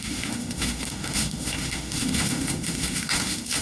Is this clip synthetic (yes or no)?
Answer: yes